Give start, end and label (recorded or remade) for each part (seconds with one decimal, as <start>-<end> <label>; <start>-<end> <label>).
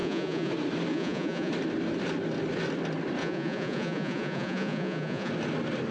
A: 0.0-0.5 remade; 0.5-0.9 recorded; 0.9-1.5 remade; 1.5-3.2 recorded; 3.2-5.3 remade; 5.3-5.9 recorded